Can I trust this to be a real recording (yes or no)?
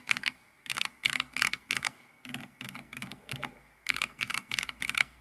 no